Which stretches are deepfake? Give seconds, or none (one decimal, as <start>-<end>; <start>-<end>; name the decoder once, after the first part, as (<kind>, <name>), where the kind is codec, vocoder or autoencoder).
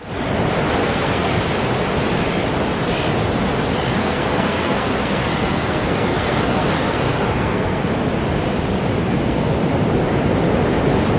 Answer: 0.8-1.4 (codec, SNAC); 4.0-7.9; 9.0-9.5